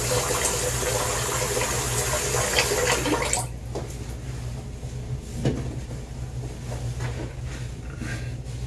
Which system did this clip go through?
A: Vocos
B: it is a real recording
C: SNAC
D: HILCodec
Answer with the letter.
B